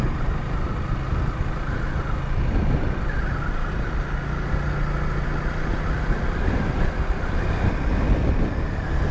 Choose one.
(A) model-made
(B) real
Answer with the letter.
B